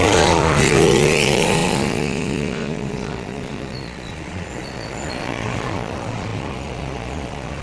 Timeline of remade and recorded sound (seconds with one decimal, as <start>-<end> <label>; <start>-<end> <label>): 0.0-7.6 remade